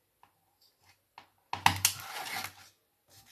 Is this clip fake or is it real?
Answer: real